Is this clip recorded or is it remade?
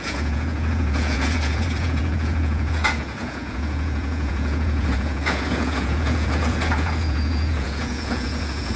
remade